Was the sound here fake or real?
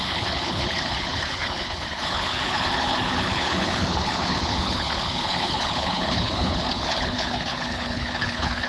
fake